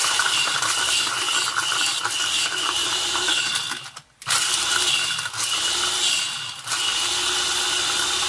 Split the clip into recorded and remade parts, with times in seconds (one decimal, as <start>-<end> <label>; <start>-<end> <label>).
0.0-1.1 remade; 1.1-2.4 recorded; 2.4-3.6 remade; 3.6-8.3 recorded

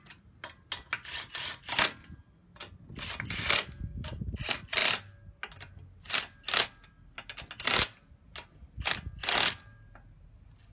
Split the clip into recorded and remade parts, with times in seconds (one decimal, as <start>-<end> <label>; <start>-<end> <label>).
0.0-10.7 recorded